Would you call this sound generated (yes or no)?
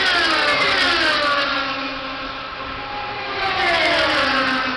no